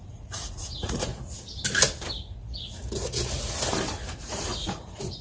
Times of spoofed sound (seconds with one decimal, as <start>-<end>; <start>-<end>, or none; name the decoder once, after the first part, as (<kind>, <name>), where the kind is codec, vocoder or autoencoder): 0.0-1.1 (vocoder, Vocos); 4.2-5.2